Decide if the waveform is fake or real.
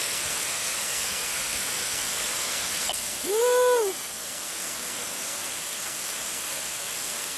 fake